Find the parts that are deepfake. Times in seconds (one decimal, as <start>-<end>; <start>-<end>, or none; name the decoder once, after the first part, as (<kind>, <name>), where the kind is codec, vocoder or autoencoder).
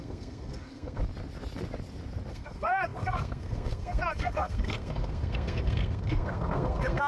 0.0-1.0 (codec, SNAC); 2.3-7.1